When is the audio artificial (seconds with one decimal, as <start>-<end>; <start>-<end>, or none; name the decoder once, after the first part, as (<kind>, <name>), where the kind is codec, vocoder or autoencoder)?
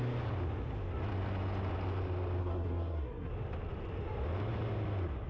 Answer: 2.4-3.3 (codec, SNAC)